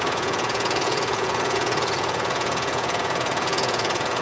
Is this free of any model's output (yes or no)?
no